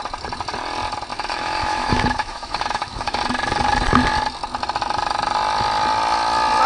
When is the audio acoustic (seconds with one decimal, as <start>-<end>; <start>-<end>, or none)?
0.0-1.1; 3.2-6.7